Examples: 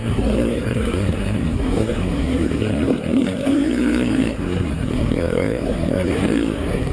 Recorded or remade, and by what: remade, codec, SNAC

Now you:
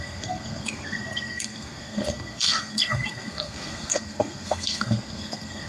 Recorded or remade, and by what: remade, codec, SNAC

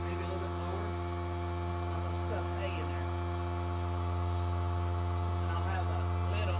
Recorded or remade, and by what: recorded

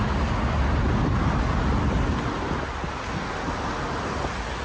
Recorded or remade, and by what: recorded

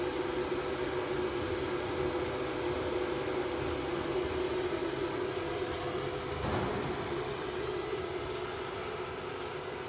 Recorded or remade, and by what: recorded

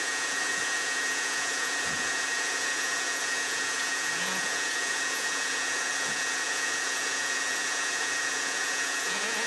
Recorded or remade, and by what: remade, vocoder, Vocos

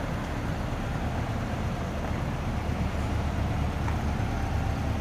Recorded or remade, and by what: recorded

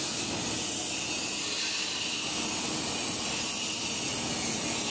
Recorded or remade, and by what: recorded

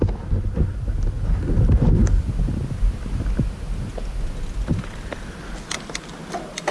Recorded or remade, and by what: recorded